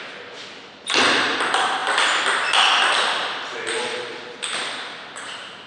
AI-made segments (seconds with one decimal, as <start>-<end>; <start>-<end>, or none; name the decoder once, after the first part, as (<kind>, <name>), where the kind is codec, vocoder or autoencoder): none